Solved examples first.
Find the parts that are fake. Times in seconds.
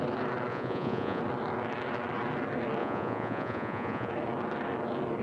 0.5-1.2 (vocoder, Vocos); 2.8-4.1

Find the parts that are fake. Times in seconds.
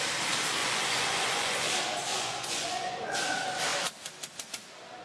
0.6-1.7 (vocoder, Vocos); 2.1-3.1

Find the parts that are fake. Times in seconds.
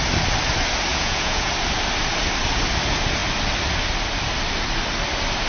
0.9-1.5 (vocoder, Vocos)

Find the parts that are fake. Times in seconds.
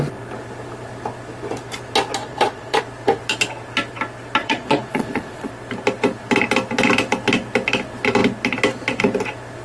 2.2-2.8 (vocoder, Vocos); 4.4-5.5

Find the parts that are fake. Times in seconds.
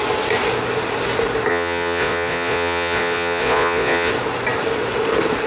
1.5-4.1 (vocoder, Vocos)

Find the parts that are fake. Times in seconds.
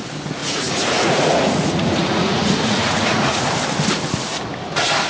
0.4-3.5 (vocoder, Vocos)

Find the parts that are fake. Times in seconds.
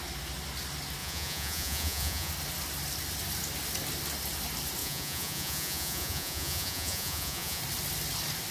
1.0-2.3 (vocoder, Vocos); 4.8-7.6